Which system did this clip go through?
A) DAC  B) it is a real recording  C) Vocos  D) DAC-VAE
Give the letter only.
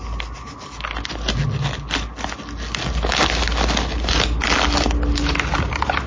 B